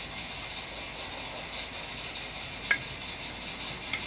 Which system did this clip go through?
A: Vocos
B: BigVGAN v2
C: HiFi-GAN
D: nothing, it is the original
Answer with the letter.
D